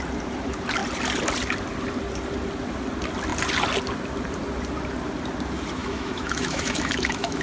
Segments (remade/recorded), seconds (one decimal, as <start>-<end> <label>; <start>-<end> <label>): 0.0-5.8 recorded; 5.8-7.4 remade